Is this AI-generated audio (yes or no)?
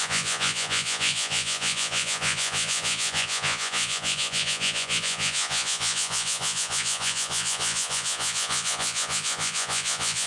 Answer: yes